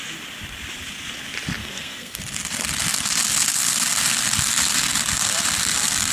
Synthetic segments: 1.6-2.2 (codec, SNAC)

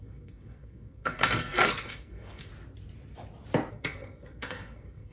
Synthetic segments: 0.0-2.5 (codec, SNAC); 3.7-5.1

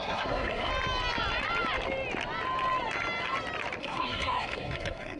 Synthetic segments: 0.0-0.7 (codec, SNAC); 3.8-5.2